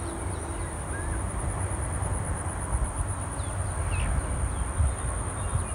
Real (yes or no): yes